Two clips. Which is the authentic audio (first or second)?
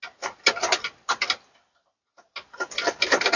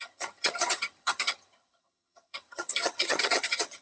first